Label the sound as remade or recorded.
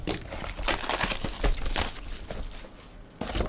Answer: recorded